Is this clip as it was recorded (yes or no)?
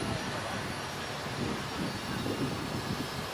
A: yes